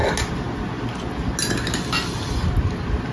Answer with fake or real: real